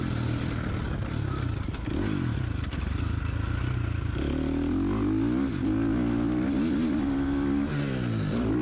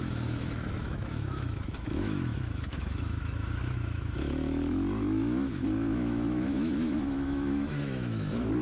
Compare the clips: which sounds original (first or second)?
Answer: first